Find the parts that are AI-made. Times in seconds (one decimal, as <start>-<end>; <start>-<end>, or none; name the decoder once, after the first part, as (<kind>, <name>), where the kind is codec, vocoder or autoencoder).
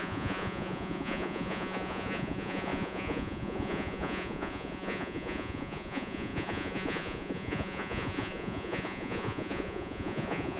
0.0-10.6 (vocoder, Vocos)